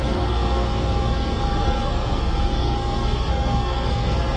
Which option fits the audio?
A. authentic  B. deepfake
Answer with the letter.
B